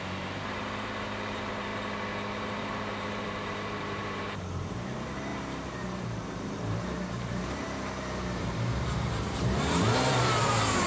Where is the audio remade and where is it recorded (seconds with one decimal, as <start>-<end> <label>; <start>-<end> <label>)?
0.0-1.7 remade; 1.7-2.3 recorded; 2.3-10.9 remade